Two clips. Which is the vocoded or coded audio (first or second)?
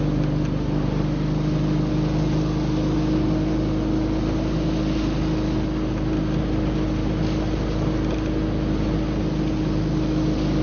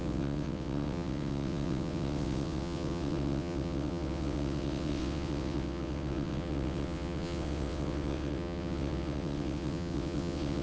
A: second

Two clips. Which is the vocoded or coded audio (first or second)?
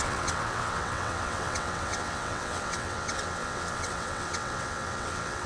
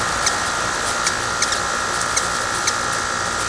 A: first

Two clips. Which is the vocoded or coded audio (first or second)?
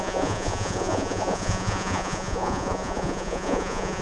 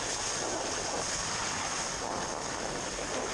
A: first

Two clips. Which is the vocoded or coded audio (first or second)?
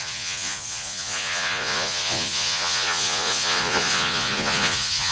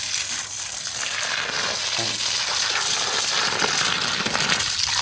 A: first